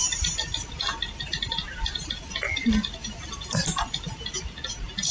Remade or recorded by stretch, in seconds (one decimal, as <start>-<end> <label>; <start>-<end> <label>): 0.0-2.1 remade; 2.1-3.0 recorded; 3.0-3.6 remade; 3.6-5.1 recorded